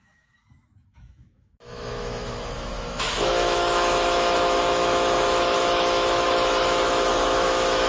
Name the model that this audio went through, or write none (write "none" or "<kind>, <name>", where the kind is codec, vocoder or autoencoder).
autoencoder, DAC-VAE